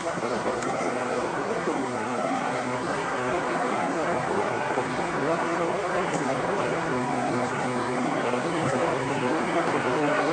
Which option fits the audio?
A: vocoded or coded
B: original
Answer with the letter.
A